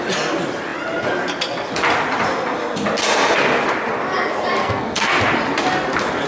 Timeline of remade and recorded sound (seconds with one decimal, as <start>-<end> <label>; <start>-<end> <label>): 0.0-4.6 recorded; 4.6-5.2 remade; 5.2-6.3 recorded